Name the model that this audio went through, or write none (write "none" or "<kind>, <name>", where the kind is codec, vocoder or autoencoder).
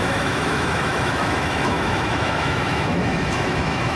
autoencoder, DAC-VAE